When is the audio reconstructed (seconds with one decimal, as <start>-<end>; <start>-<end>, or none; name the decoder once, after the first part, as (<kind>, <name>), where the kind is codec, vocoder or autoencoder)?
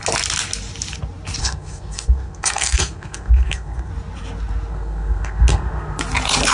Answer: 1.4-3.9 (codec, SNAC); 4.7-6.0